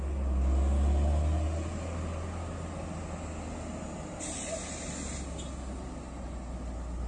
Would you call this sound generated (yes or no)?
no